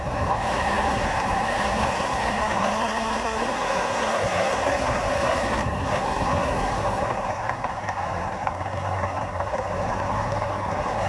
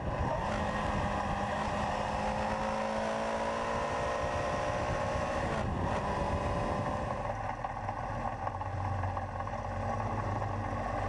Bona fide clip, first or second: second